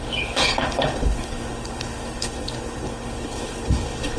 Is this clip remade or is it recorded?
remade